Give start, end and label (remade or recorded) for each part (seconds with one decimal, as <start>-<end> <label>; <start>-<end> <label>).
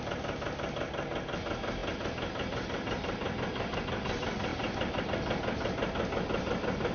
0.0-6.9 recorded